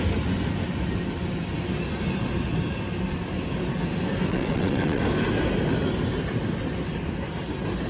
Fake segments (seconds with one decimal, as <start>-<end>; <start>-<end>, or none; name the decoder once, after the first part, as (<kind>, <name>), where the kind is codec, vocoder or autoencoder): 4.3-5.0 (vocoder, WaveNeXt)